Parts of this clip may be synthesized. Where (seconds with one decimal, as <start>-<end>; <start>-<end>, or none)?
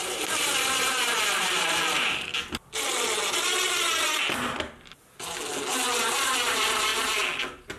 0.0-2.3; 6.0-6.9